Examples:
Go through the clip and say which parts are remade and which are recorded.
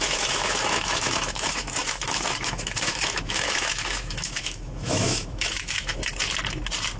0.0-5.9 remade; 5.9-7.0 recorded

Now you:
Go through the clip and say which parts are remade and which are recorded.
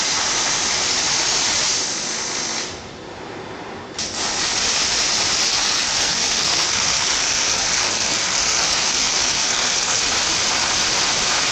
0.0-5.5 recorded; 5.5-10.0 remade; 10.0-11.5 recorded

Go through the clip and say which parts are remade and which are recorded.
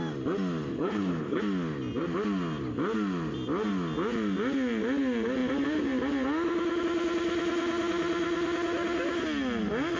0.0-0.7 recorded; 0.7-1.4 remade; 1.4-10.0 recorded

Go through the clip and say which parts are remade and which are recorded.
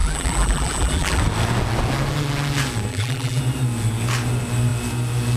0.0-1.2 remade; 1.2-2.9 recorded; 2.9-3.4 remade; 3.4-5.4 recorded